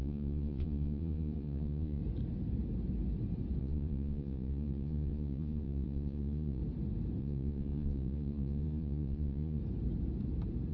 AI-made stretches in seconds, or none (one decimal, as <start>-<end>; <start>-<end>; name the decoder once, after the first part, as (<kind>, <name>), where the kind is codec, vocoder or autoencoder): 0.0-2.0 (vocoder, Vocos); 3.6-6.6; 7.2-9.6